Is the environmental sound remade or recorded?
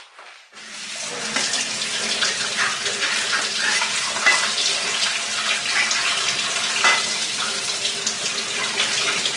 recorded